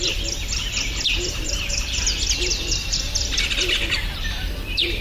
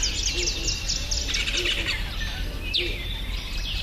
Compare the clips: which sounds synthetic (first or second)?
first